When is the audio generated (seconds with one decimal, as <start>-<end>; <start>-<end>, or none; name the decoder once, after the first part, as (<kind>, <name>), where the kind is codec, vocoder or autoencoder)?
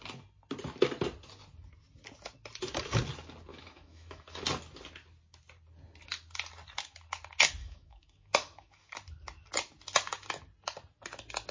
3.5-4.4 (autoencoder, DAC-VAE); 7.6-8.9